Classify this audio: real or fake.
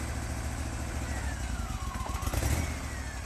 real